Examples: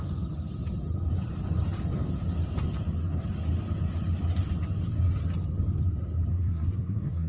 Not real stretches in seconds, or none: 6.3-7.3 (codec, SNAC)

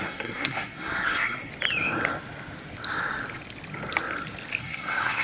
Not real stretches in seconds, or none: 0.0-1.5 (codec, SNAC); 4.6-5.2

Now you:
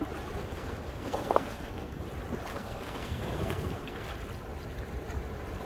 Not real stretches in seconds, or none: 0.4-2.0 (codec, SNAC); 2.5-4.1